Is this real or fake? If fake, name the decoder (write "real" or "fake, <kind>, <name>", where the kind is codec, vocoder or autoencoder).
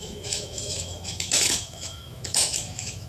fake, autoencoder, DAC-VAE